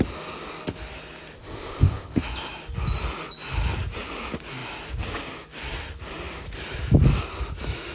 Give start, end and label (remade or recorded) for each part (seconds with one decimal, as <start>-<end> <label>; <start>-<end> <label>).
0.0-1.3 recorded; 1.3-2.2 remade; 2.2-7.9 recorded